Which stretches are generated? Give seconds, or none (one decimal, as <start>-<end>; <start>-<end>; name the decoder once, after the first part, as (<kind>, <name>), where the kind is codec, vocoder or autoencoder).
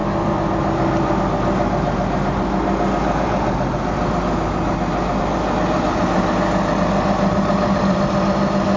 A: none